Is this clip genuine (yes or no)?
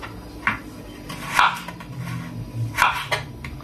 yes